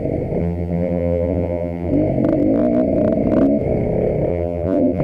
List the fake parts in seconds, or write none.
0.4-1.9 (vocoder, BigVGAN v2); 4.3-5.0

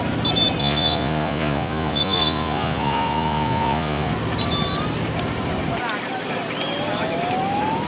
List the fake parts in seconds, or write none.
0.6-4.1 (vocoder, Vocos)

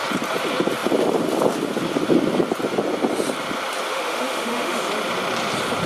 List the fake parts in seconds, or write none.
3.9-4.8 (autoencoder, DAC-VAE)

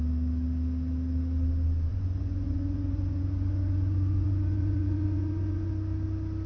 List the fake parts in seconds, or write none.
1.9-5.7 (vocoder, Vocos)

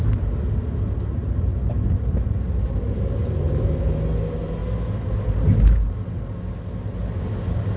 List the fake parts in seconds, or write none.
none

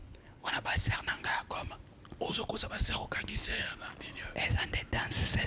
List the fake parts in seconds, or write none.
0.0-0.5 (codec, HILCodec); 2.8-3.7